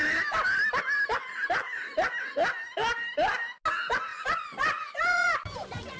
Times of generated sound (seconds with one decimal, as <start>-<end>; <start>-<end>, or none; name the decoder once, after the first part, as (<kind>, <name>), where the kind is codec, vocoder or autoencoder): 4.1-5.4 (vocoder, Vocos)